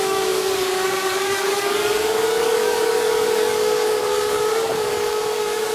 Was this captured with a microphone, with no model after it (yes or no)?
no